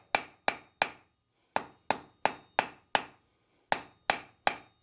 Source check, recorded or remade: recorded